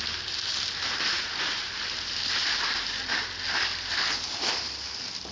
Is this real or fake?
real